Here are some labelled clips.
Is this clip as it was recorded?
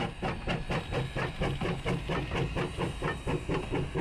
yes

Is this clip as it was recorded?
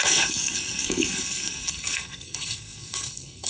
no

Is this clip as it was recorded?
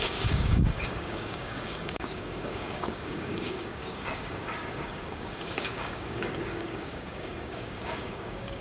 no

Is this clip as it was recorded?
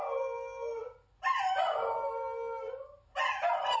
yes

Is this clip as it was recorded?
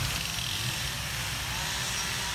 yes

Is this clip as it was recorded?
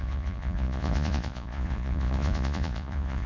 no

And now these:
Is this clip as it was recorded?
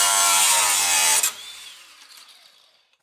no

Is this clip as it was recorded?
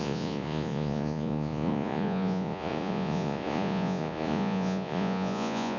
no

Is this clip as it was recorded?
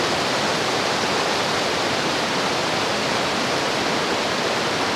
no